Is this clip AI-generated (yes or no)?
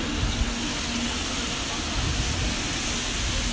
no